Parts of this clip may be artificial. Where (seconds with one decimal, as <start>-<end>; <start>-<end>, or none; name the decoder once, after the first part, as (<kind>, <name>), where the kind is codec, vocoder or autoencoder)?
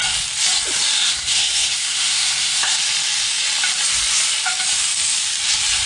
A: 1.0-2.8 (codec, SNAC)